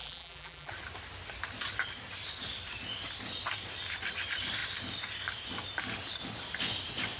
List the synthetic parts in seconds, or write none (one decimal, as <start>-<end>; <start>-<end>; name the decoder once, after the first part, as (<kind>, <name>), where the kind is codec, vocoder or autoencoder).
0.0-0.7 (vocoder, BigVGAN v2)